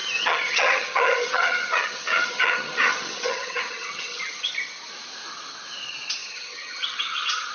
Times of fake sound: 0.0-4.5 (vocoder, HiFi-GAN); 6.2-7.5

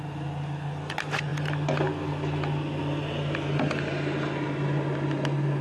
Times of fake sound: none

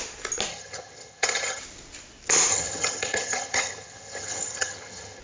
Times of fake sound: 0.5-1.6 (vocoder, HiFi-GAN); 2.5-5.2

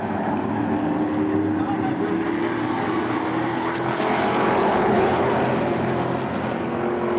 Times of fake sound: 3.5-4.0 (codec, HILCodec); 4.6-5.3

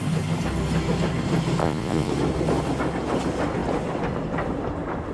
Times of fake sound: 1.6-2.1 (vocoder, Vocos)

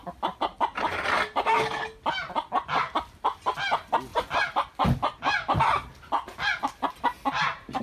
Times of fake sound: none